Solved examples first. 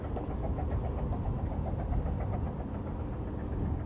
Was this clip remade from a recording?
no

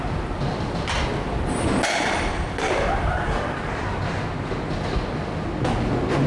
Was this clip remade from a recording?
no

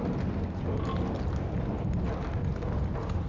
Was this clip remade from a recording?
no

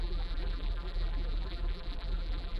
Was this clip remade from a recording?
yes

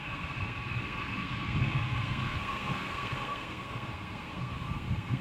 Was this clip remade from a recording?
yes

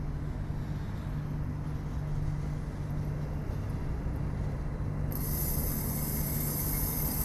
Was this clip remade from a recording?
no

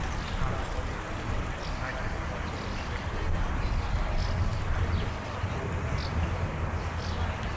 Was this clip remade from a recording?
no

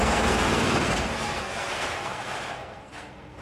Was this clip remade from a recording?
yes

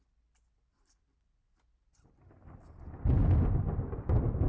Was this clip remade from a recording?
no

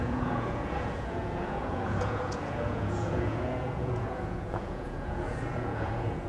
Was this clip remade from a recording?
yes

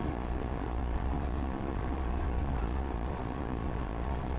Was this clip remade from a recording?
yes